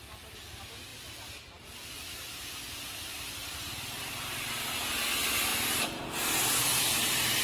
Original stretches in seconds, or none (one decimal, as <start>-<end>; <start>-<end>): 0.0-3.4; 4.0-7.4